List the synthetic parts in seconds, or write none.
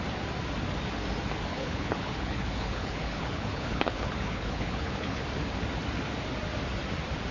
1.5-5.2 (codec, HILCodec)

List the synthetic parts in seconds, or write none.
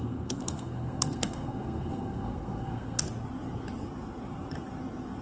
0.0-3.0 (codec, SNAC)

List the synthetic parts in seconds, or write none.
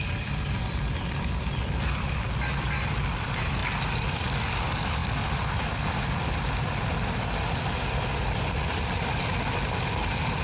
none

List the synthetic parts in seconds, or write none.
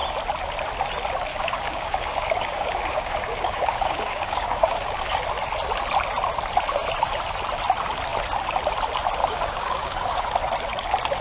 1.3-5.2 (codec, DAC); 9.2-10.2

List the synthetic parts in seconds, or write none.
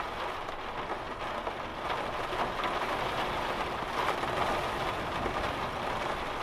1.7-5.5 (vocoder, BigVGAN v2)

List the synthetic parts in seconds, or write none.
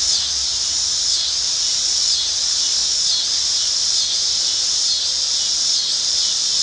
0.0-2.8 (vocoder, BigVGAN v2); 3.6-4.9; 5.6-6.6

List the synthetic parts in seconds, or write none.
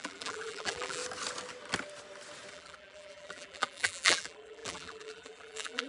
0.0-1.0 (vocoder, BigVGAN v2); 2.5-5.9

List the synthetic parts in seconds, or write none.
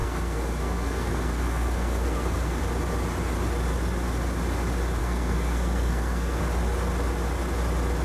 0.0-2.6 (codec, SNAC); 5.0-6.4